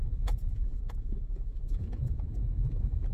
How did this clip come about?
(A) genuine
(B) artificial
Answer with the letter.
B